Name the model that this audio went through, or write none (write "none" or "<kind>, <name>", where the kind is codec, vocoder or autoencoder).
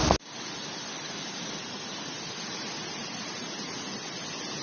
none